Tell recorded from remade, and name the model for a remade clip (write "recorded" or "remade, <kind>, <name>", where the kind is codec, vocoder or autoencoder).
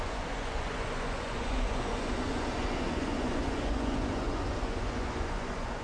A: remade, vocoder, Vocos